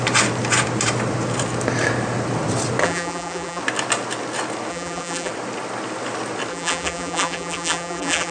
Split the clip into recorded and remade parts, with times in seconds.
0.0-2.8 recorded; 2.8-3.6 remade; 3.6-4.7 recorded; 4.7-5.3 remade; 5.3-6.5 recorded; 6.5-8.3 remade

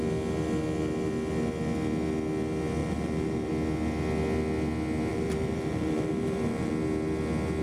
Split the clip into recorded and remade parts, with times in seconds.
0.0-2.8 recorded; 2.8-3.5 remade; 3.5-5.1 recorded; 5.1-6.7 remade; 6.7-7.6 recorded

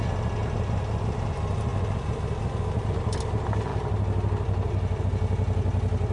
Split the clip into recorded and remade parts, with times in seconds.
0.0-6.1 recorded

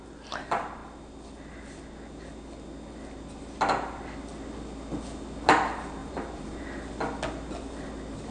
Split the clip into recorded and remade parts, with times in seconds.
0.0-6.0 recorded; 6.0-6.6 remade; 6.6-8.3 recorded